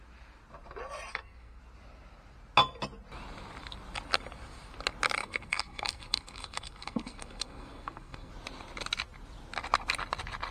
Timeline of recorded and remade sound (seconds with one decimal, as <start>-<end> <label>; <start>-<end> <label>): 0.0-1.1 recorded; 1.1-1.6 remade; 1.6-5.2 recorded; 5.2-8.3 remade; 8.3-10.5 recorded